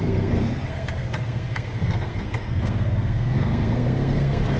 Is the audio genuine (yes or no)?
no